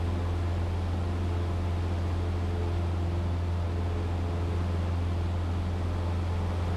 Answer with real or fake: real